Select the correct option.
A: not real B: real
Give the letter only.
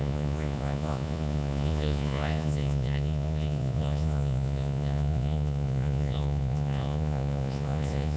A